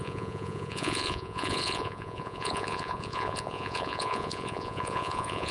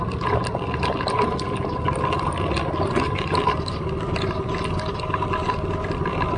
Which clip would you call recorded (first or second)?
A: second